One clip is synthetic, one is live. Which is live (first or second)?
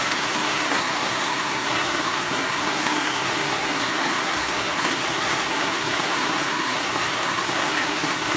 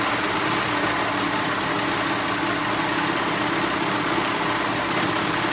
second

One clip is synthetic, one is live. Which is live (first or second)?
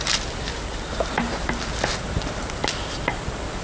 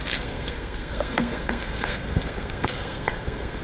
first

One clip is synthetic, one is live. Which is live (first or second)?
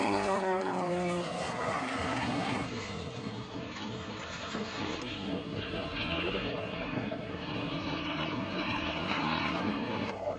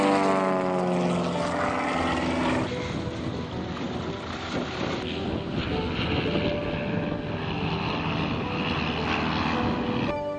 second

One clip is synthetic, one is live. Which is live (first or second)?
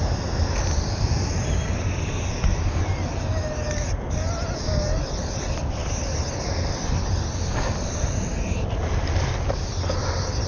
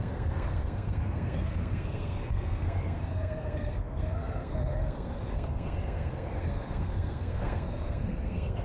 first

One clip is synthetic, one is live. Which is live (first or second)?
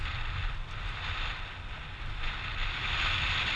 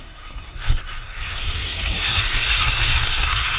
first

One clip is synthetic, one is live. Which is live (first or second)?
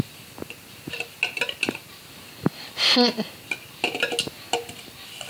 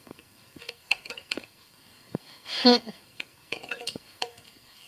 first